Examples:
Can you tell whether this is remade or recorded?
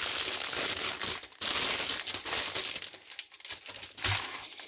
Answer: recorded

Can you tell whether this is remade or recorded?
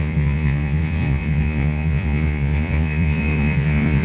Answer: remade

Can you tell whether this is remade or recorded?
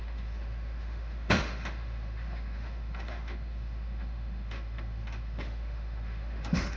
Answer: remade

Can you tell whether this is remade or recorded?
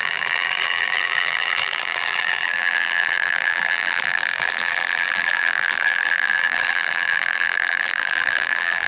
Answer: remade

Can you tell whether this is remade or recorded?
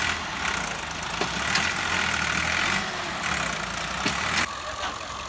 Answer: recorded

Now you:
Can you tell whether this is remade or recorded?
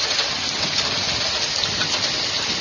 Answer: recorded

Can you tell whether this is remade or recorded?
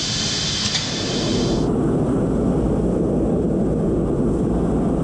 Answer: recorded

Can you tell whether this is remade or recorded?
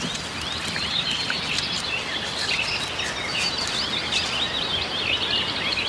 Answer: recorded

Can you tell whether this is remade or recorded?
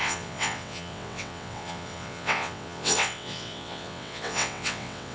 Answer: remade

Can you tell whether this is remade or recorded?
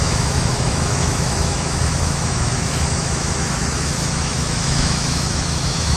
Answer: remade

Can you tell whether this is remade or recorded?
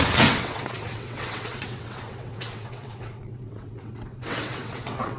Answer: remade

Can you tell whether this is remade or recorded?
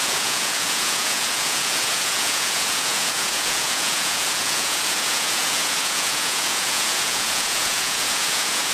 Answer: remade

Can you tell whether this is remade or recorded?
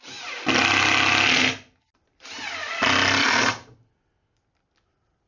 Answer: recorded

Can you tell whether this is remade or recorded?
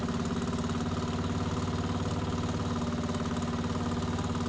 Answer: recorded